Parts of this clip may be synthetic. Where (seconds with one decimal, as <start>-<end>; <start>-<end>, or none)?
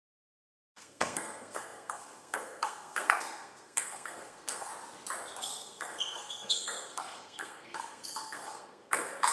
0.0-4.7; 5.4-9.3